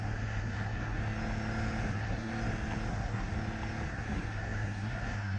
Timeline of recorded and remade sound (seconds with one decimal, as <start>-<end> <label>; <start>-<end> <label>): 0.0-1.0 remade; 1.0-1.9 recorded; 1.9-2.3 remade; 2.3-2.9 recorded; 2.9-3.3 remade; 3.3-3.9 recorded; 3.9-5.4 remade

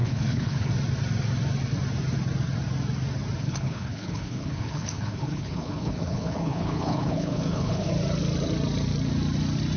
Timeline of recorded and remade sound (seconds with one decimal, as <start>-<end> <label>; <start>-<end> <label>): 0.0-0.7 remade; 0.7-3.4 recorded; 3.4-7.9 remade; 7.9-9.8 recorded